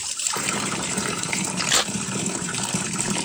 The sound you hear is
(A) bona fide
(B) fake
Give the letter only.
B